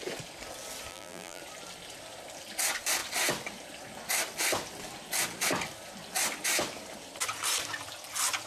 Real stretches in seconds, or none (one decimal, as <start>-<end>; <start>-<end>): 0.0-0.9; 1.4-8.5